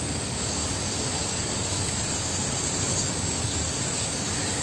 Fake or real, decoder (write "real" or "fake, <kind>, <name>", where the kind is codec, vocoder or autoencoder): fake, codec, DAC